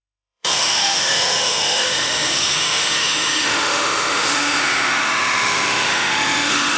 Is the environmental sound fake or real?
fake